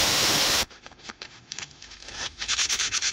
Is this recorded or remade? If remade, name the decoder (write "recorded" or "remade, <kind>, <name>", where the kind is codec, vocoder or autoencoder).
remade, autoencoder, DAC-VAE